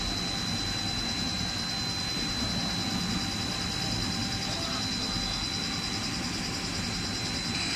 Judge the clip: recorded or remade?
recorded